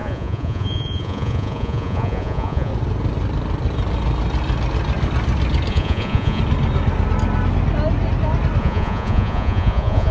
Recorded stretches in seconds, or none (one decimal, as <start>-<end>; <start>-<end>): 2.7-5.7; 6.4-8.6